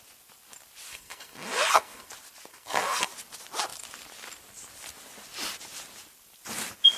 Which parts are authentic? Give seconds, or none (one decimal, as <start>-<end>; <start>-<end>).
0.0-0.9; 2.1-2.5; 3.1-7.0